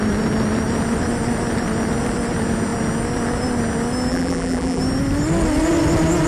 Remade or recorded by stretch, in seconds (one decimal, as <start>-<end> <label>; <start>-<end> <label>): 0.0-4.1 recorded; 4.1-4.8 remade; 4.8-6.3 recorded